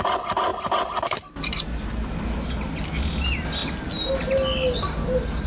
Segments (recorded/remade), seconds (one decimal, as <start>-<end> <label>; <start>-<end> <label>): 0.0-5.5 recorded